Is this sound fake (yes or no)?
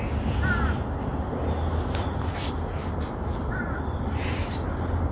no